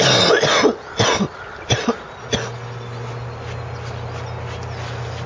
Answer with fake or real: real